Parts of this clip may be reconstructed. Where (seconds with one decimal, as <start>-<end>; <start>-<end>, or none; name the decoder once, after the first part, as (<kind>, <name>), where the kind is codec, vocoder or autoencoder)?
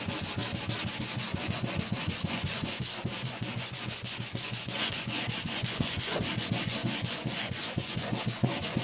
0.0-0.4 (vocoder, Vocos); 0.9-8.8